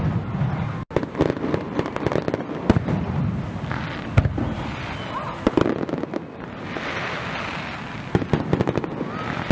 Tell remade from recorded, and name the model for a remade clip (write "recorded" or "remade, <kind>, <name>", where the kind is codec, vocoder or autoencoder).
recorded